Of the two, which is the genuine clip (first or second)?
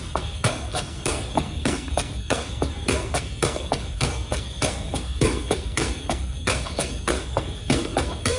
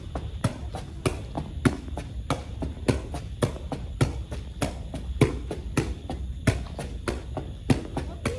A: second